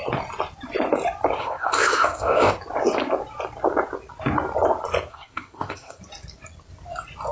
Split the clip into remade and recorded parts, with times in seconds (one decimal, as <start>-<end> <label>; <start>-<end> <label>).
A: 0.0-1.4 recorded; 1.4-2.5 remade; 2.5-5.1 recorded; 5.1-6.0 remade; 6.0-7.3 recorded